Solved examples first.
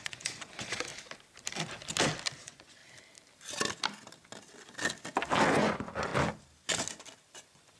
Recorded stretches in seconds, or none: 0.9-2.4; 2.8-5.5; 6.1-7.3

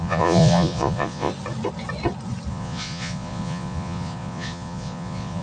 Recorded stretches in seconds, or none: 1.3-2.5